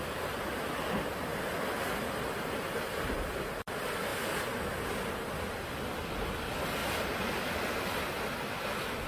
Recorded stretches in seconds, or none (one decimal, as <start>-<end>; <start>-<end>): 0.0-9.1